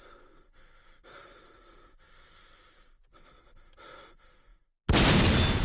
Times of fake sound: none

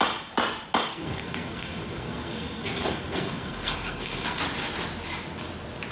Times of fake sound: 0.9-4.4 (codec, SNAC)

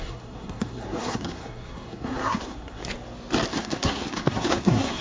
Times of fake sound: 0.0-2.8 (codec, SNAC); 3.5-5.0

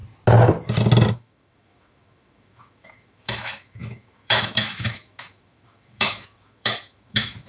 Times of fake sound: 1.1-7.5 (autoencoder, DAC-VAE)

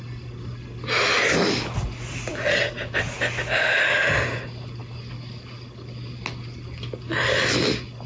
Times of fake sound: none

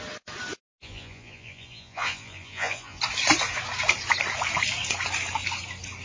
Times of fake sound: 0.7-3.0 (vocoder, Vocos)

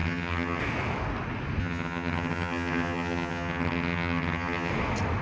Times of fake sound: 0.0-0.6 (vocoder, HiFi-GAN); 1.6-4.7

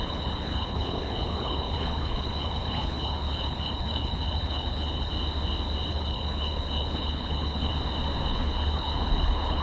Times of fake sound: 0.0-5.1 (codec, HILCodec); 5.9-7.7; 8.3-9.6